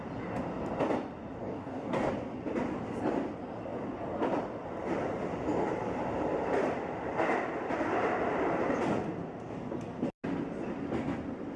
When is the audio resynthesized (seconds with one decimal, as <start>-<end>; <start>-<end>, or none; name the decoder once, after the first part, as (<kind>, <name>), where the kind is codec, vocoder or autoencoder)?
1.4-2.1 (codec, DAC)